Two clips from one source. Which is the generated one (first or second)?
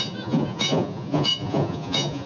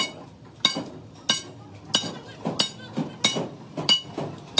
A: first